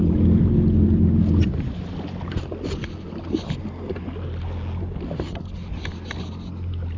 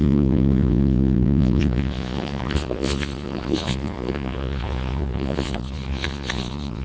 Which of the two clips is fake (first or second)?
second